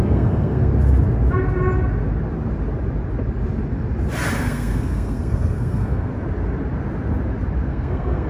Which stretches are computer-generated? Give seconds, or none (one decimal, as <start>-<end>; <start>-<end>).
0.0-0.7; 4.4-6.1; 7.7-8.3